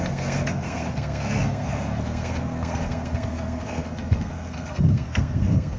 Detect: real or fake fake